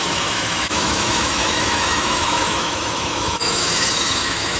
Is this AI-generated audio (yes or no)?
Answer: yes